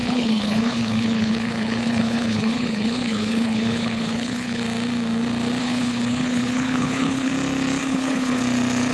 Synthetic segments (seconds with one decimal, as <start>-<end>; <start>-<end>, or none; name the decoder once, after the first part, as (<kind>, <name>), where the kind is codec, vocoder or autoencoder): 0.0-4.6 (codec, HILCodec); 5.6-7.3; 7.8-8.4